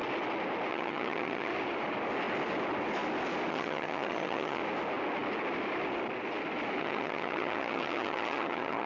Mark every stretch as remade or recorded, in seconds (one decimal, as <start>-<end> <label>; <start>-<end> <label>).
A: 0.0-0.7 recorded; 0.7-1.5 remade; 1.5-3.5 recorded; 3.5-4.6 remade; 4.6-6.8 recorded; 6.8-8.9 remade